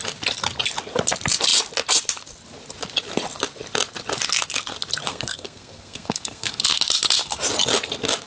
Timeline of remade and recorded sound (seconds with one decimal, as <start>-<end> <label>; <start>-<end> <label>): 0.0-5.1 recorded; 5.1-6.6 remade; 6.6-8.3 recorded